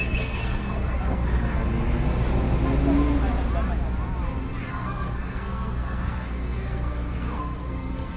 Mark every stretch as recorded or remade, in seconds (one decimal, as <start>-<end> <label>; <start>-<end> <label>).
0.0-1.6 remade; 1.6-4.7 recorded; 4.7-8.2 remade